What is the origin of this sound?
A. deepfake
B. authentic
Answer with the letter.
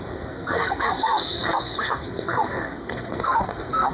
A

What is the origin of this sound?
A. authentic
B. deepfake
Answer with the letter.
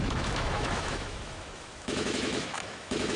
B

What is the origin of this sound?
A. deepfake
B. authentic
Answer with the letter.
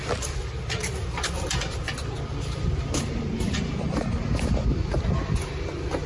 B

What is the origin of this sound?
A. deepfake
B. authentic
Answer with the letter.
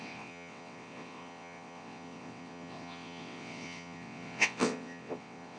A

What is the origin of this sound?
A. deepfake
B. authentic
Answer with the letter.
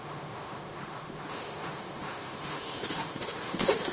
A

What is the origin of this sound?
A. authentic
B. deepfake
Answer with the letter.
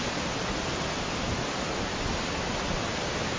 A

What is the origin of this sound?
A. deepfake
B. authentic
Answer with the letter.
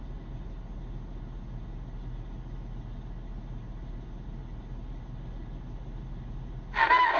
B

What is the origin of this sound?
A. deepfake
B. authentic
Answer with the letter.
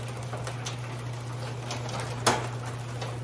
B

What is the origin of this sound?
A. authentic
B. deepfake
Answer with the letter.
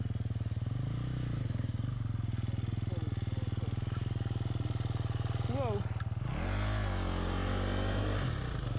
A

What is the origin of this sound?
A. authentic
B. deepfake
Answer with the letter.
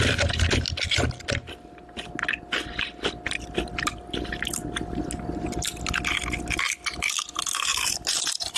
A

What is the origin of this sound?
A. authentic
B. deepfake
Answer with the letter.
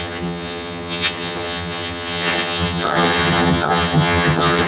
B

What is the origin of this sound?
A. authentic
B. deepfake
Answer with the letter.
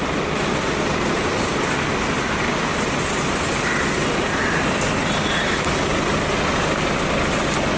A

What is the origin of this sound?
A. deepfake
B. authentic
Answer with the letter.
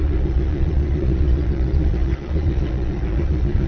A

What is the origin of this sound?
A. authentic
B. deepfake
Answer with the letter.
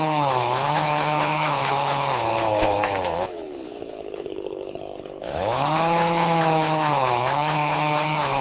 B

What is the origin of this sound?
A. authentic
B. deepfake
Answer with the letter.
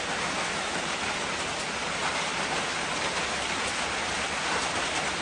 A